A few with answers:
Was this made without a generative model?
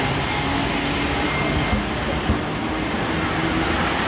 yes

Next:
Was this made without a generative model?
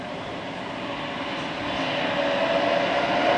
yes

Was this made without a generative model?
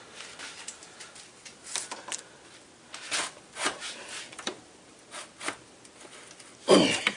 yes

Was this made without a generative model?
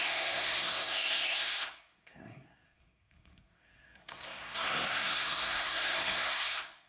no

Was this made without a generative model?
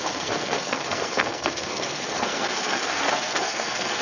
no